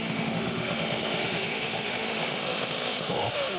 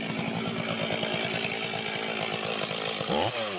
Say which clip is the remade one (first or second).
first